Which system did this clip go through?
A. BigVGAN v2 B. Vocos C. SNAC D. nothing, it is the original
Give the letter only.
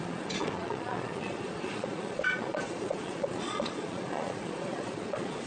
B